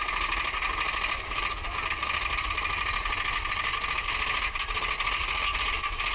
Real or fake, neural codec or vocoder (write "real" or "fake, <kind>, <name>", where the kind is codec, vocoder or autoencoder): real